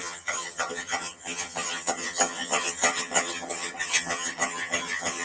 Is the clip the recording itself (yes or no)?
no